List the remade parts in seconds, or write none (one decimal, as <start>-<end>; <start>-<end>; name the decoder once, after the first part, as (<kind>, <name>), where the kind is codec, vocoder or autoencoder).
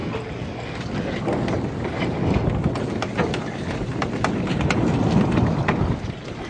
none